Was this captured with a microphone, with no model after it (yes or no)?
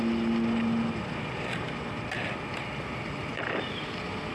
yes